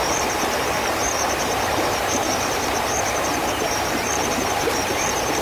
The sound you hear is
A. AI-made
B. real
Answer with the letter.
A